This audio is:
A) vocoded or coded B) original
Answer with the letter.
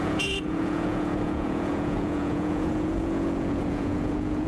A